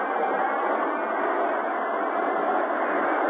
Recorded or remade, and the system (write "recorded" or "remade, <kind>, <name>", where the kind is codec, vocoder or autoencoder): recorded